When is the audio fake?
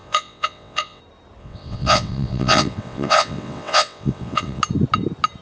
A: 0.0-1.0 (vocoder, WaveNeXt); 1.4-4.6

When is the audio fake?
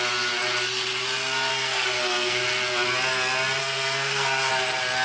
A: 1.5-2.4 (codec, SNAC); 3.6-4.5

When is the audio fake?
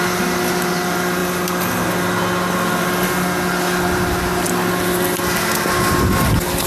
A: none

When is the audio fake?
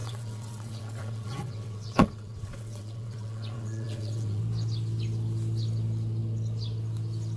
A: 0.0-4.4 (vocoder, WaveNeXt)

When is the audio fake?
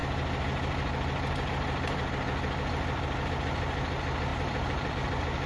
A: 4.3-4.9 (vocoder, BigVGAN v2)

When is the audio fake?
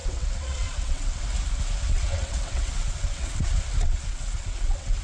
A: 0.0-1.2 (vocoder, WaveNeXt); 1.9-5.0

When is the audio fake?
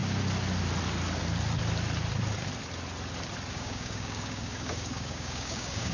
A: 3.5-5.9 (codec, DAC)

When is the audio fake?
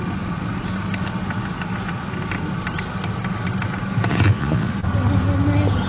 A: 4.1-4.7 (vocoder, Vocos)